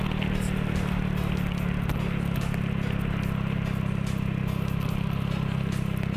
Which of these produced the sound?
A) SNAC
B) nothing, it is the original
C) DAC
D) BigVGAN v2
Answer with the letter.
B